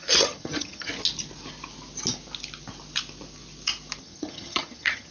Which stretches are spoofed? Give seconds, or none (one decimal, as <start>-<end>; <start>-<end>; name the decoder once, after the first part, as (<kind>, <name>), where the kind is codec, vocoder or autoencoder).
0.0-0.9 (vocoder, HiFi-GAN); 4.0-5.1